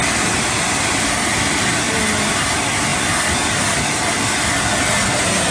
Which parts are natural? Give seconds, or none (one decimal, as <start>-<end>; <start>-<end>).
0.0-5.5